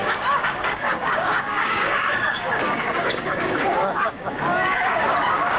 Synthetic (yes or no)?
yes